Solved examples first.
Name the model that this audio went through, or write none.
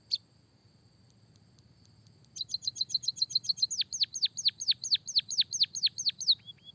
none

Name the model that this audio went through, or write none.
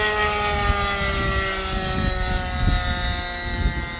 none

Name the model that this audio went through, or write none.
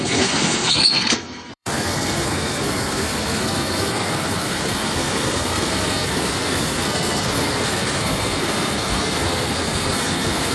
codec, SNAC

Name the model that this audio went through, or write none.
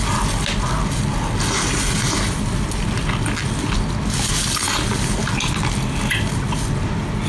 none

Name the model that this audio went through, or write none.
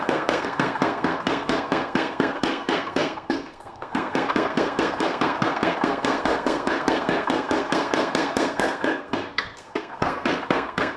codec, SNAC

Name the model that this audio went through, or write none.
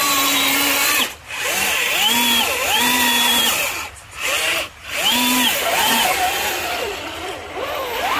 none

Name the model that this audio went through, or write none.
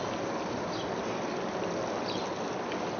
none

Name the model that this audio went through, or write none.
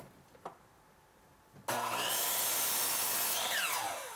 none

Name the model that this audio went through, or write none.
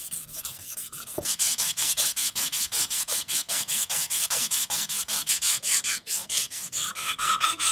codec, SNAC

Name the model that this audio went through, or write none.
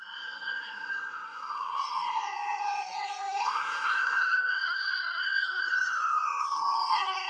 codec, SNAC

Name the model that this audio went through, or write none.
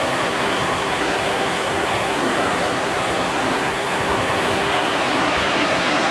codec, SNAC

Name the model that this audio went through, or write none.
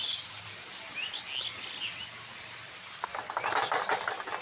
none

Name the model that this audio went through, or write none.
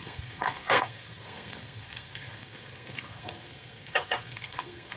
codec, SNAC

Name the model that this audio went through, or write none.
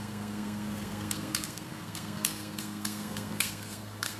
codec, SNAC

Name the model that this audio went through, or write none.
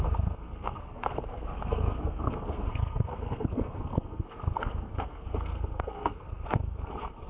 codec, SNAC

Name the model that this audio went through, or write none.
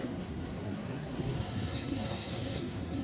codec, SNAC